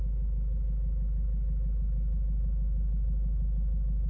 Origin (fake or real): real